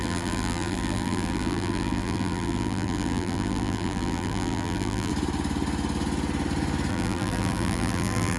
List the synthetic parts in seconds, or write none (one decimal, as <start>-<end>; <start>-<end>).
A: 0.0-5.1; 6.9-8.4

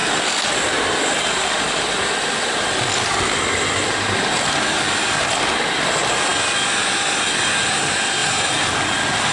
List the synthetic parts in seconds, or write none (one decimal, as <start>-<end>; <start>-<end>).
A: none